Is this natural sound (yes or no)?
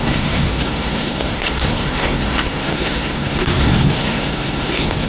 no